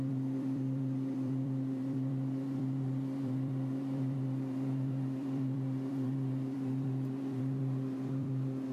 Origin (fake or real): fake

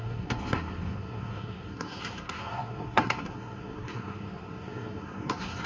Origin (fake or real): fake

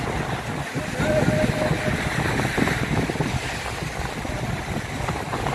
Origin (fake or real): real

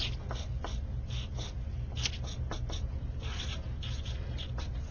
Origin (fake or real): real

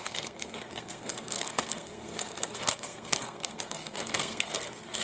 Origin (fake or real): fake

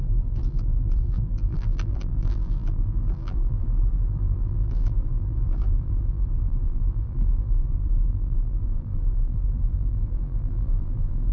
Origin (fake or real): fake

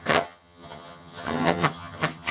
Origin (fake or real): fake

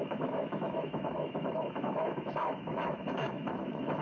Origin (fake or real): fake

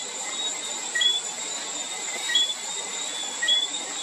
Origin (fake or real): real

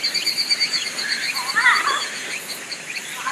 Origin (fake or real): real